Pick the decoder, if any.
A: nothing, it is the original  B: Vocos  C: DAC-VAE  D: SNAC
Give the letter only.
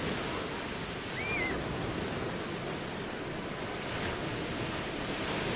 A